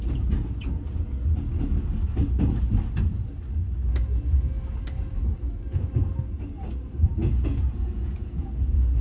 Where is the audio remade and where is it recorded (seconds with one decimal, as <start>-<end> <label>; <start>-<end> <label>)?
0.0-7.2 recorded; 7.2-9.0 remade